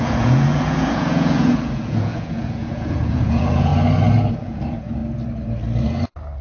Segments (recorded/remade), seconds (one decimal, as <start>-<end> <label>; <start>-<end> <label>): 0.0-3.7 remade; 3.7-4.3 recorded; 4.3-5.0 remade; 5.0-6.4 recorded